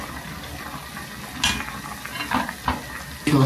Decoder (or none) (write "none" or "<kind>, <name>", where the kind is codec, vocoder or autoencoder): none